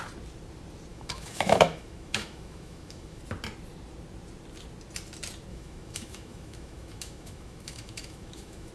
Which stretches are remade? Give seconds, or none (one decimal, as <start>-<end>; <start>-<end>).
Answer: 0.9-3.2; 5.5-8.7